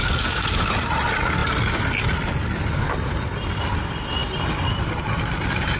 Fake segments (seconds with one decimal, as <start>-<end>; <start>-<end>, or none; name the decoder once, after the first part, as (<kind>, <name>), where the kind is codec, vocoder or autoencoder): 0.0-0.7 (codec, DAC)